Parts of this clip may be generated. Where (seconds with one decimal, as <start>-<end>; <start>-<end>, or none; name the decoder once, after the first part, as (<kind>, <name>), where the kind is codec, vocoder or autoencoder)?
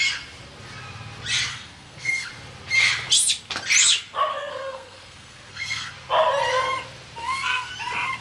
1.5-2.3 (codec, SNAC); 4.3-5.9; 7.2-7.7